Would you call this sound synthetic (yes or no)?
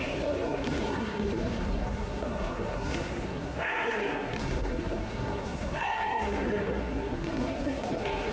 yes